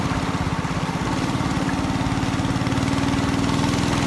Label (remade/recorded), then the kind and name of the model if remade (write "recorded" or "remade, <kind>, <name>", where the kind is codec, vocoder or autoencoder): recorded